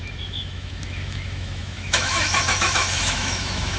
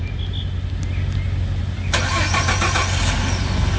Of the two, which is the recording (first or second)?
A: second